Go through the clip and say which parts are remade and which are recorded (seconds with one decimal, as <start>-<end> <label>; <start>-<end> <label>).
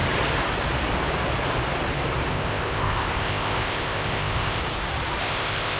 0.0-2.3 recorded; 2.3-4.6 remade; 4.6-5.2 recorded; 5.2-5.8 remade